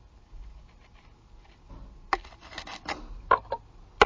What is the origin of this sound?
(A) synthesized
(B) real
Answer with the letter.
B